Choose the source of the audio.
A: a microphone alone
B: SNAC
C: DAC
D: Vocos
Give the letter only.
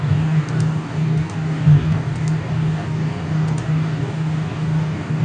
C